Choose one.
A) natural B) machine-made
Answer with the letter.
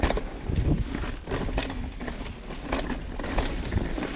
A